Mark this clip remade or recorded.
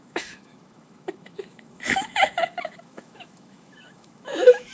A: remade